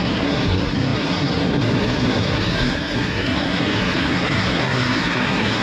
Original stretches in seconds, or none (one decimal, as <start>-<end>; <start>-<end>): none